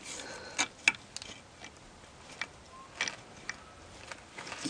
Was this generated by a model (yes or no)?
no